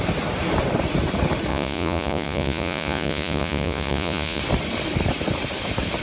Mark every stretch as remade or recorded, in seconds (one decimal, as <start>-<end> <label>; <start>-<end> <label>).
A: 0.0-1.5 recorded; 1.5-4.4 remade; 4.4-6.0 recorded

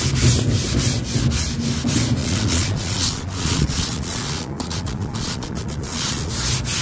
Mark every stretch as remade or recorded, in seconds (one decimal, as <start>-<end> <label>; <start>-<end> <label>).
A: 0.0-2.2 recorded; 2.2-6.3 remade; 6.3-6.8 recorded